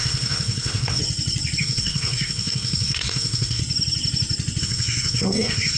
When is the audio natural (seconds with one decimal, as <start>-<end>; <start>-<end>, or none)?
1.0-1.6; 3.6-4.6